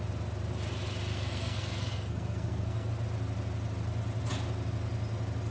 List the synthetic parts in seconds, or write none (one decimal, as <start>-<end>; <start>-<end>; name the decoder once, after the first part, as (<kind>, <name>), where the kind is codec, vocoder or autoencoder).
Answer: 1.1-2.9 (codec, SNAC)